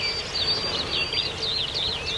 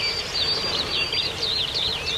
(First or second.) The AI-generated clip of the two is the second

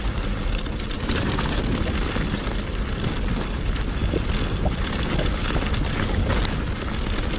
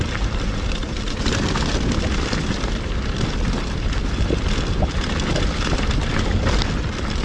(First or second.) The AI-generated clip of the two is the second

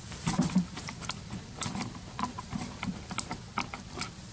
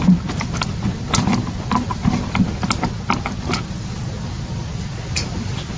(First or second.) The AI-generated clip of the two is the first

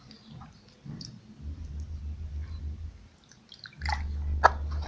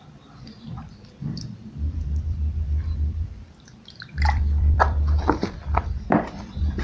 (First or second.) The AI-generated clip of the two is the second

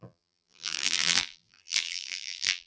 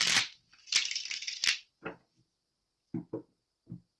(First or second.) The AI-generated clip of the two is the first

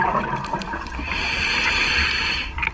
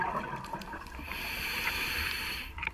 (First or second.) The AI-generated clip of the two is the second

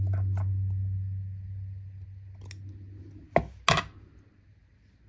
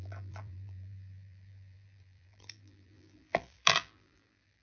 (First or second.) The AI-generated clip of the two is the second